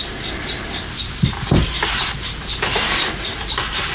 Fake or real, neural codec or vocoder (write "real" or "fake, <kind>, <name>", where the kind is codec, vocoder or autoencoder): fake, vocoder, BigVGAN v2